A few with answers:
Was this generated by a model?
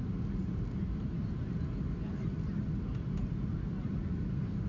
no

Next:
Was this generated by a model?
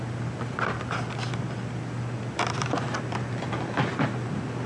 no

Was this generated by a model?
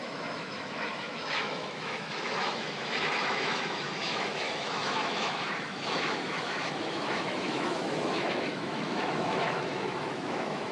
yes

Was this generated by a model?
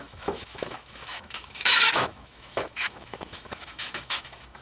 yes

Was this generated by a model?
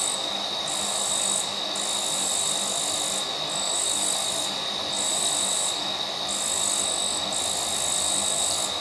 no